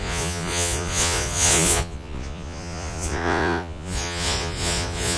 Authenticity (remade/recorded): remade